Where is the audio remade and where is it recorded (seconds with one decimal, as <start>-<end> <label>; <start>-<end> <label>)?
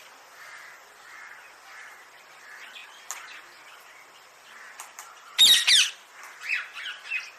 0.0-7.4 recorded